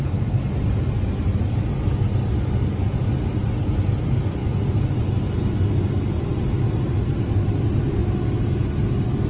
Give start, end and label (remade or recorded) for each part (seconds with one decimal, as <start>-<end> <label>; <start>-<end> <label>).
0.0-9.3 recorded